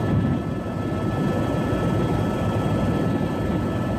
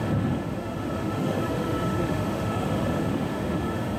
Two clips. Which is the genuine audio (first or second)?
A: first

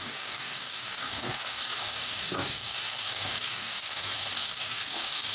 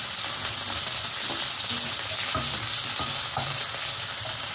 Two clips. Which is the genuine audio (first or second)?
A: second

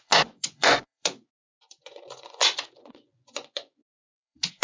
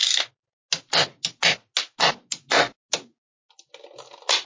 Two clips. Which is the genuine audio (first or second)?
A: second